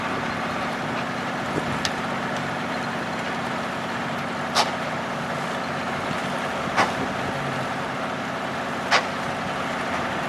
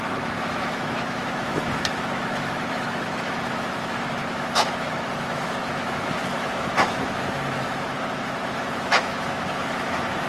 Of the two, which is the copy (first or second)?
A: second